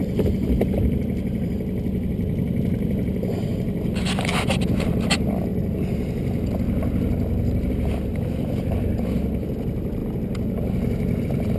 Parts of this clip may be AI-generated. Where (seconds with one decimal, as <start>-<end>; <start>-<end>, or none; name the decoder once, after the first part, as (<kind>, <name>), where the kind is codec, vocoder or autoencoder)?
0.0-5.5 (vocoder, BigVGAN v2); 7.7-10.0; 11.2-11.6